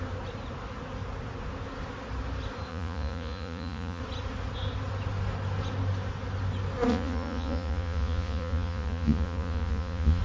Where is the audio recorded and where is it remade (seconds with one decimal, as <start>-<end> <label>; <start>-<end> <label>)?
0.0-2.7 recorded; 2.7-4.0 remade; 4.0-6.9 recorded; 6.9-10.2 remade